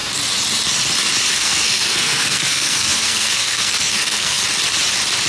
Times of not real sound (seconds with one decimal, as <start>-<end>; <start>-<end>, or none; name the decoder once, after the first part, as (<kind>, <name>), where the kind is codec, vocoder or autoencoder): 1.3-4.4 (codec, SNAC)